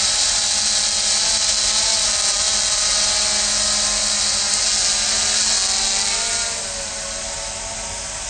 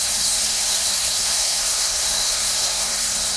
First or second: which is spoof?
second